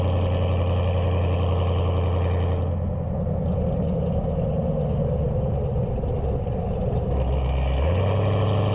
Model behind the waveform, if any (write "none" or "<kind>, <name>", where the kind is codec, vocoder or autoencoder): none